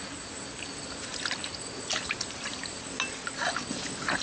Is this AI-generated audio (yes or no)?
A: no